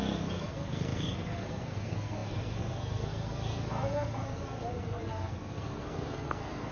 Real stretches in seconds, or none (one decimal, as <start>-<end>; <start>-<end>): none